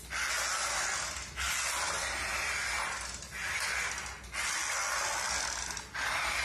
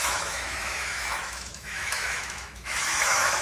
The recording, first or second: first